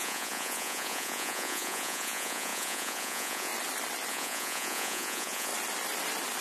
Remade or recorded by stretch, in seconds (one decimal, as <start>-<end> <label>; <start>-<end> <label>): 0.0-3.5 remade; 3.5-4.1 recorded; 4.1-5.5 remade; 5.5-6.4 recorded